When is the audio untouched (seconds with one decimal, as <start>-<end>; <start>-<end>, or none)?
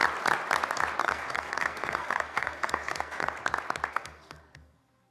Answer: 0.0-1.0; 3.3-3.9